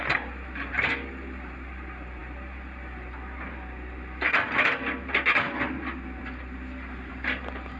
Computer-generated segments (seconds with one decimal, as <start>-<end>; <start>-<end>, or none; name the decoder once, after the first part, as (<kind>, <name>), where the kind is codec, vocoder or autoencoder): none